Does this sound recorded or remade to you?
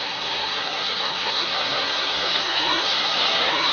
remade